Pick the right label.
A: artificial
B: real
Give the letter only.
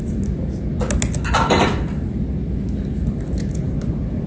B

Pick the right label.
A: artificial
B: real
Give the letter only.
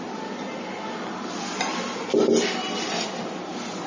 B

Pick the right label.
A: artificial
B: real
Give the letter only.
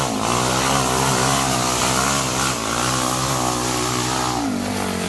B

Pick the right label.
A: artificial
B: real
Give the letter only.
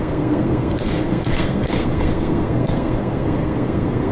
A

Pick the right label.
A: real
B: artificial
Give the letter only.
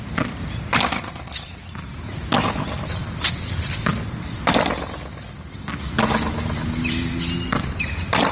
A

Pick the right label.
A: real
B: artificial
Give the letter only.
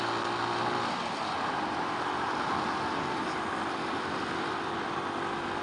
A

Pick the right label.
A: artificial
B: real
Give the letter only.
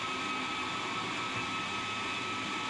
B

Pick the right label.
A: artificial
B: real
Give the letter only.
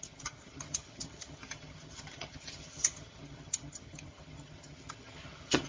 A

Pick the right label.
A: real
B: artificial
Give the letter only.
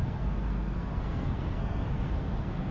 B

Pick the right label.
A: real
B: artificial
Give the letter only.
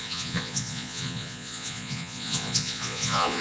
B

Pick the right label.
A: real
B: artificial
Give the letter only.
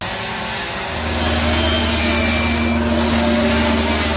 A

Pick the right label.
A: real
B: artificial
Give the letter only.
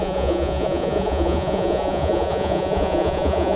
B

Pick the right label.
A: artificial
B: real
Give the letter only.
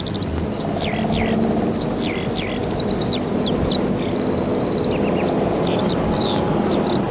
B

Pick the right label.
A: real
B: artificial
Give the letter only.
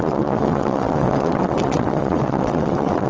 B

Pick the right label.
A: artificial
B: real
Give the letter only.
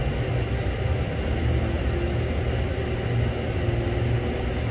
B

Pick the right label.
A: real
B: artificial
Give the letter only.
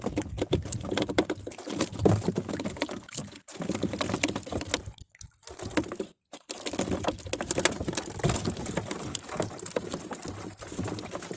A